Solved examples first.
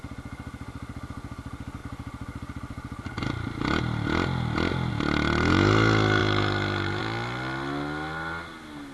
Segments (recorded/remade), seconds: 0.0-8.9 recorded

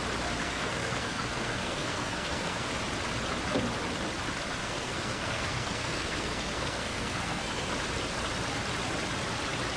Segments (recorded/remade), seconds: 0.0-0.4 recorded; 0.4-2.7 remade; 2.7-4.6 recorded; 4.6-7.7 remade; 7.7-9.8 recorded